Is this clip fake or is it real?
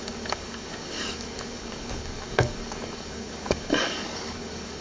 fake